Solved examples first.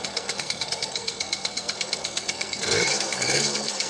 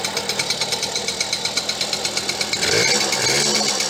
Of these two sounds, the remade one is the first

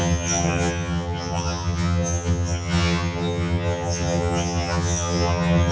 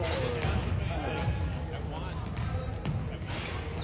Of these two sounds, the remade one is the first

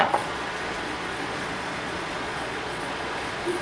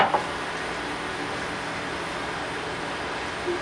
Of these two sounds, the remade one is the first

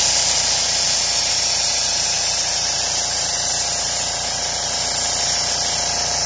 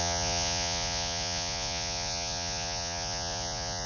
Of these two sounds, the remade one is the second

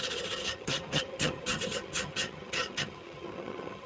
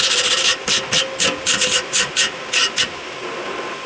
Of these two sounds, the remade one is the first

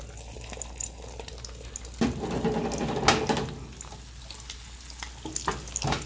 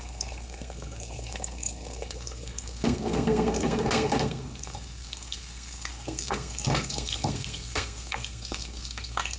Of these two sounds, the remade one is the second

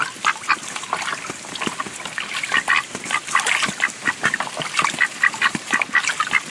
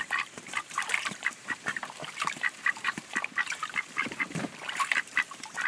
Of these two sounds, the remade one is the second